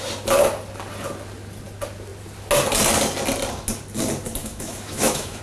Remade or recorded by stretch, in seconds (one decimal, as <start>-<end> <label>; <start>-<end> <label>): 0.0-4.4 recorded; 4.4-5.4 remade